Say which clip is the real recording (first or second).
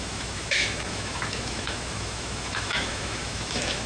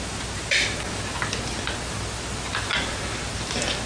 second